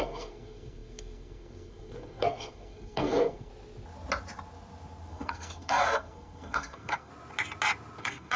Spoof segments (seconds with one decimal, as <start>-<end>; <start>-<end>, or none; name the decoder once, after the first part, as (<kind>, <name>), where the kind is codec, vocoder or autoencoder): 0.0-3.5 (codec, SNAC); 5.1-7.1; 8.0-8.4